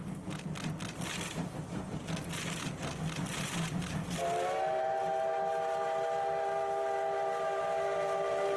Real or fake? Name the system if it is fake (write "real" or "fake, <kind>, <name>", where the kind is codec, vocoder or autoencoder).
real